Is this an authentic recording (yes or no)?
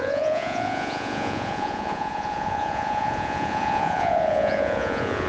no